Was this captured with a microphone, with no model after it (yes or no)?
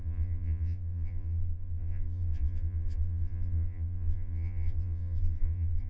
no